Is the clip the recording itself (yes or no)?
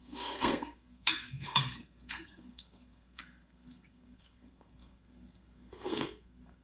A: no